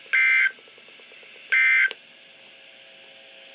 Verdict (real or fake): real